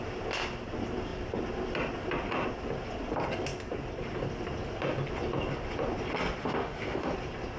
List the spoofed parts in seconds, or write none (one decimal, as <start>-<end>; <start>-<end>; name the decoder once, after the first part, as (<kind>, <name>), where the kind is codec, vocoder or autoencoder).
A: 6.4-7.1 (autoencoder, DAC-VAE)